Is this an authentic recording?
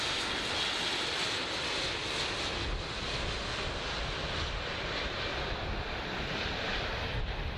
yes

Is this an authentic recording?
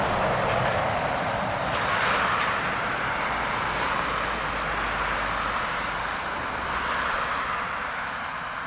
yes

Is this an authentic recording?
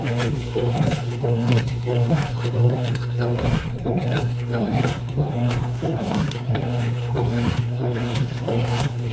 no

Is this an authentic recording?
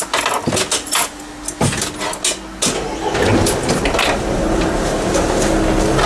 yes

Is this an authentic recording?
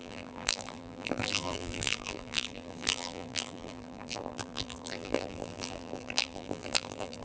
no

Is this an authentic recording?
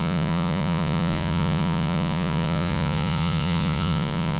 no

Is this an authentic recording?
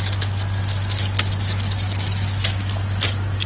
yes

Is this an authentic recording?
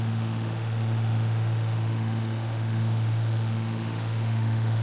no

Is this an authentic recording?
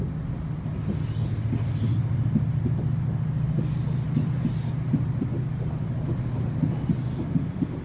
yes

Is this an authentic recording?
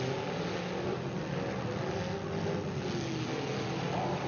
yes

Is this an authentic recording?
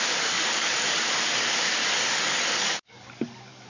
no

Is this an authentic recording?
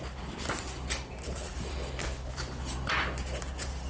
no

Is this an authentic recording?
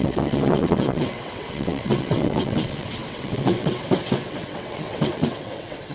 no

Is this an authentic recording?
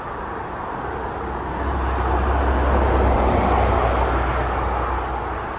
yes